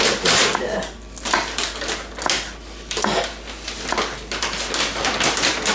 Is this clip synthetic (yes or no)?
no